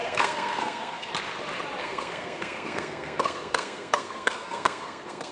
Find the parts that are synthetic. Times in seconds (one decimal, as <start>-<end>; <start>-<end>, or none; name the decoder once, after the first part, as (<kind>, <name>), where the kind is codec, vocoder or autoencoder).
0.0-1.1 (codec, SNAC); 1.8-5.3